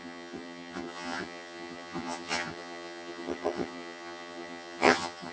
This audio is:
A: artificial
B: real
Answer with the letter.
A